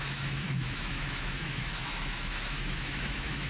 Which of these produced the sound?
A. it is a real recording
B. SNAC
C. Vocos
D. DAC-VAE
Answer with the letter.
D